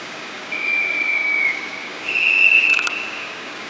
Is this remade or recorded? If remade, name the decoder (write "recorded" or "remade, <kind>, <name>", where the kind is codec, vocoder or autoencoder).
remade, codec, DAC